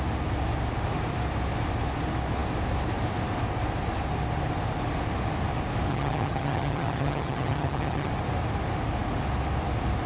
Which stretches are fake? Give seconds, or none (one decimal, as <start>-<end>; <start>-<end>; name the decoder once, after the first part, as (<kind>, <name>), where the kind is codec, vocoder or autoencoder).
5.9-8.1 (vocoder, HiFi-GAN)